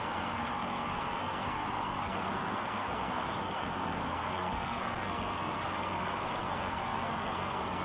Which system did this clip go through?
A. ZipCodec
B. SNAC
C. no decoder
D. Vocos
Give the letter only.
B